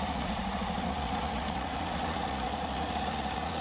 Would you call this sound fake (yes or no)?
yes